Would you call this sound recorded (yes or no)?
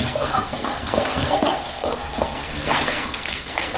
no